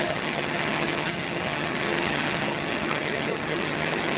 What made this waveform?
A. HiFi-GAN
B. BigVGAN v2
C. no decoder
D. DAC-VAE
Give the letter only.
A